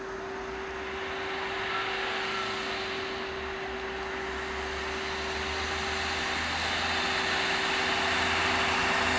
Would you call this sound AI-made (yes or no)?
no